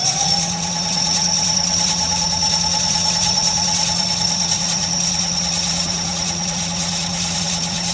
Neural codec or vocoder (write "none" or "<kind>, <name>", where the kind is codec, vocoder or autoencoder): vocoder, Vocos